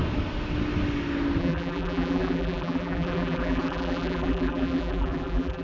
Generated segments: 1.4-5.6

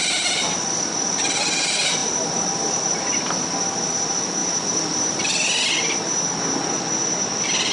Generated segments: 4.4-5.2

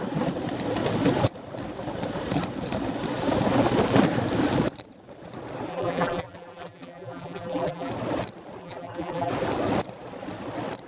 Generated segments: 5.7-7.9; 8.6-9.3

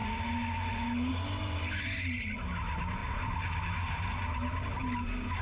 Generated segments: none